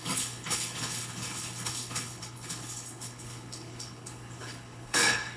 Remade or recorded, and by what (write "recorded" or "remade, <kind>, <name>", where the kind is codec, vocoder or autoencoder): remade, codec, HILCodec